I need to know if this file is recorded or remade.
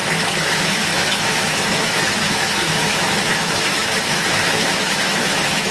remade